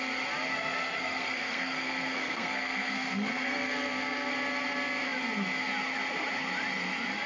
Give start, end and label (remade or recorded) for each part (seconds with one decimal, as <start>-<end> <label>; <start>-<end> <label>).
0.0-0.5 recorded; 0.5-4.3 remade; 4.3-7.3 recorded